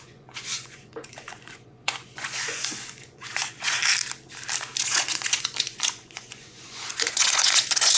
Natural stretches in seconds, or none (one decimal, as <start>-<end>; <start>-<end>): 3.8-4.8